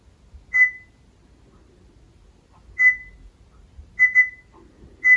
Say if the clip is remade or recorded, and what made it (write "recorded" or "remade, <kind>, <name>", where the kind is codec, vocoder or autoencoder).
recorded